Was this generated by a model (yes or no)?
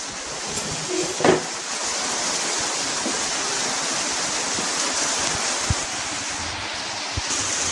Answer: no